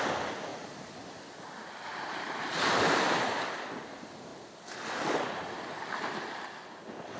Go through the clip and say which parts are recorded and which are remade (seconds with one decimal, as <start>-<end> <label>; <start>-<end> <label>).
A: 0.0-0.5 recorded; 0.5-1.4 remade; 1.4-1.9 recorded; 1.9-3.3 remade; 3.3-7.2 recorded